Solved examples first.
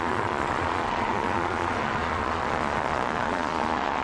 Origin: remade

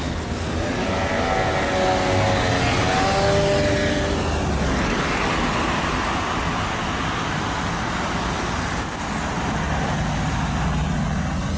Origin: recorded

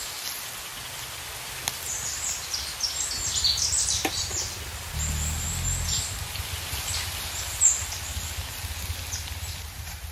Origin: recorded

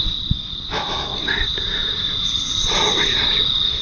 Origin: recorded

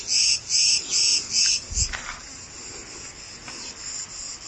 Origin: recorded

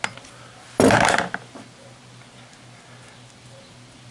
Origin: recorded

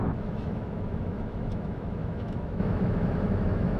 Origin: remade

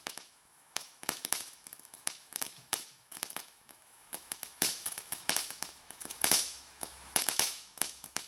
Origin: remade